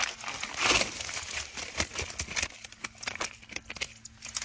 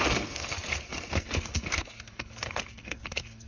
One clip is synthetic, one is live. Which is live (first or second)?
first